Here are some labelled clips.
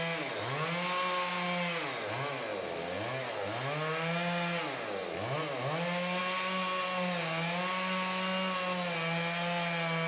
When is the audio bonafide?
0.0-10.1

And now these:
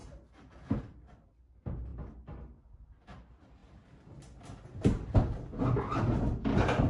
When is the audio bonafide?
0.0-6.9

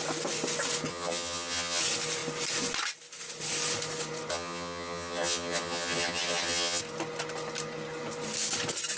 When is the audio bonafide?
0.0-0.9; 1.8-4.3; 6.8-9.0

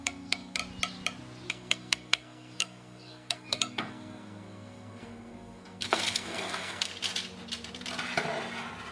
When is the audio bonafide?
0.6-1.5; 6.9-8.9

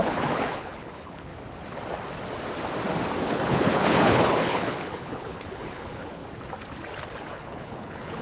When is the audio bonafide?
1.3-3.2; 6.2-7.3

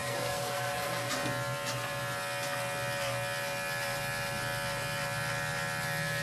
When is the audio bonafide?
1.1-6.2

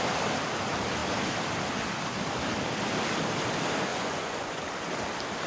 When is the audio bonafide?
0.0-3.9; 4.6-5.5

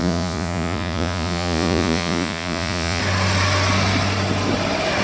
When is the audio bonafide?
3.0-5.0